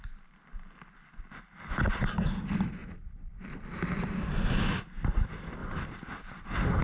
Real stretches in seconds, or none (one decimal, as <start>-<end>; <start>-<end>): 0.0-2.8; 3.5-5.6

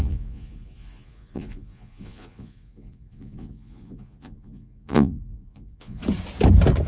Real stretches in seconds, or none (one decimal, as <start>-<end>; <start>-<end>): 6.0-6.9